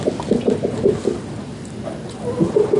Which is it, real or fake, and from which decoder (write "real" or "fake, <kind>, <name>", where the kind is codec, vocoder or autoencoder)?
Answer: real